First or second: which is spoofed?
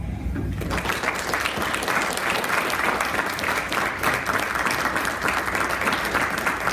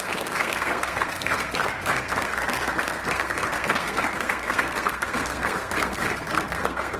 second